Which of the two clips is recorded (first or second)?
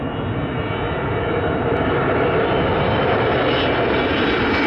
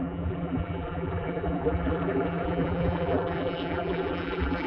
first